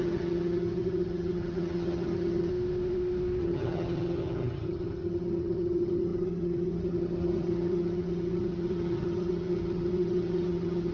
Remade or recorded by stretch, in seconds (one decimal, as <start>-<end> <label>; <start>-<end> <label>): 0.0-2.5 remade; 2.5-3.4 recorded; 3.4-10.9 remade